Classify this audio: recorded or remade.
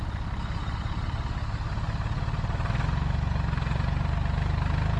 recorded